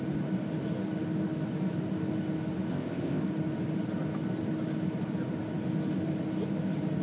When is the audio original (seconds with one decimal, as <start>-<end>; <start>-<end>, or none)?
0.0-2.7; 3.2-7.0

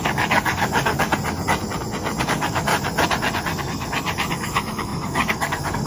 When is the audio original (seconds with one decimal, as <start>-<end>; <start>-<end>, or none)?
1.1-2.2; 2.7-4.3